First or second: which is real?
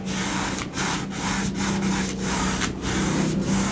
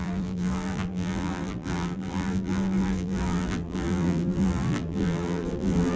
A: first